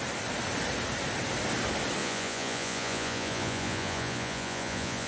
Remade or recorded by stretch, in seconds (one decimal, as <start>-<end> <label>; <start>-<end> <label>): 0.0-2.0 recorded; 2.0-5.1 remade